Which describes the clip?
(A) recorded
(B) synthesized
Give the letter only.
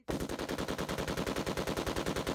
A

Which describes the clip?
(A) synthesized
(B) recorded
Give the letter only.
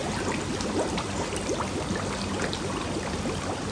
B